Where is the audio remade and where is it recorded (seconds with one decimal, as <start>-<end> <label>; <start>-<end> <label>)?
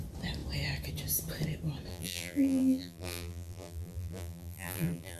0.0-1.9 recorded; 1.9-5.2 remade